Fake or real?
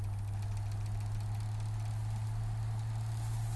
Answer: real